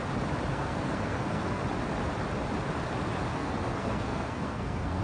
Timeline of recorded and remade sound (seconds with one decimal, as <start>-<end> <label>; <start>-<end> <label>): 0.0-0.5 recorded; 0.5-1.6 remade; 1.6-3.3 recorded; 3.3-5.0 remade